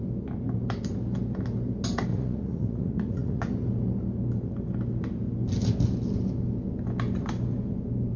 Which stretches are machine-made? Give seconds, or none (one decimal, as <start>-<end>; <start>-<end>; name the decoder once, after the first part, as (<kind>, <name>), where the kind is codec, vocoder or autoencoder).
2.1-3.4 (vocoder, Vocos)